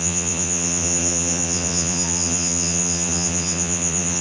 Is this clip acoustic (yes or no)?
no